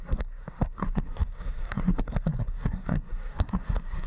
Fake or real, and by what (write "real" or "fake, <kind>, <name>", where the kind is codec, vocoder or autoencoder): fake, codec, SNAC